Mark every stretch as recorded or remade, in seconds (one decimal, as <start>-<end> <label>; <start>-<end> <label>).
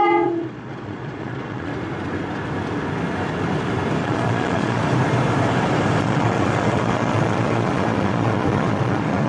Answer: 0.0-1.7 remade; 1.7-4.0 recorded; 4.0-4.8 remade; 4.8-6.0 recorded; 6.0-9.3 remade